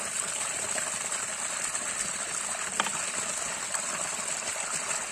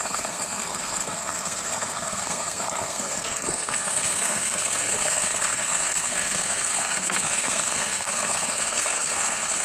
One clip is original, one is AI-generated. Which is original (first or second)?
first